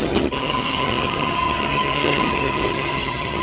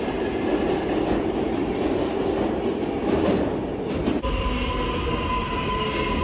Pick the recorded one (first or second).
second